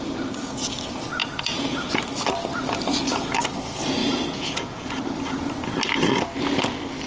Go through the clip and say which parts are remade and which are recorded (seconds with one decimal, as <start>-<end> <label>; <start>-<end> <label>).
0.0-1.2 recorded; 1.2-1.9 remade; 1.9-4.0 recorded; 4.0-5.0 remade; 5.0-7.1 recorded